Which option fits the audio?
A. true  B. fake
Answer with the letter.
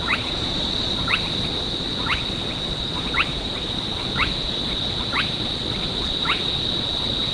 B